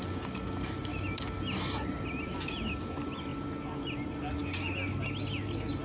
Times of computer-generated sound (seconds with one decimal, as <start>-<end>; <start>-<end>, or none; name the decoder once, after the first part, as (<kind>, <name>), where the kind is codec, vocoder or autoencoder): none